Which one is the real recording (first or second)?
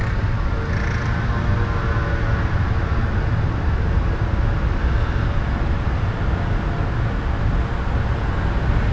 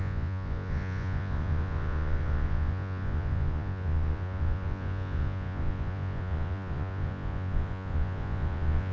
first